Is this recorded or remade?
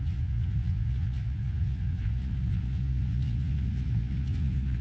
remade